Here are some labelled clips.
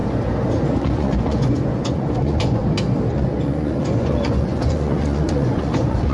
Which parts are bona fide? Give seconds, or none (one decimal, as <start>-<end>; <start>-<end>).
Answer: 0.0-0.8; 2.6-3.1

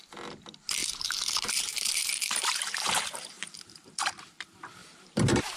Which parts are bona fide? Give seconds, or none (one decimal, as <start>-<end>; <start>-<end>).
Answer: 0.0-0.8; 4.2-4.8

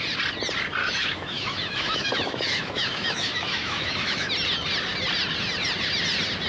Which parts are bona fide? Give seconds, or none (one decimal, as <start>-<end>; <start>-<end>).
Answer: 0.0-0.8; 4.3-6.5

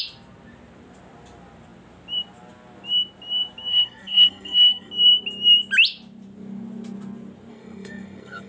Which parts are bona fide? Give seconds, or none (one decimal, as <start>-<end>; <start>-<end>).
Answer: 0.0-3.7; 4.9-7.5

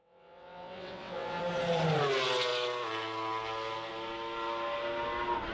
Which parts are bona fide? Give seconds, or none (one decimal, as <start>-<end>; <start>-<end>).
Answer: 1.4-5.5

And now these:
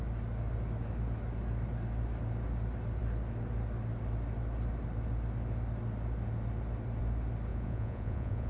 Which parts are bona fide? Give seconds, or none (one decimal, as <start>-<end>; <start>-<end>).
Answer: 0.0-7.5